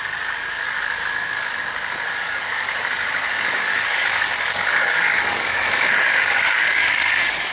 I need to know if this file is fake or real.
fake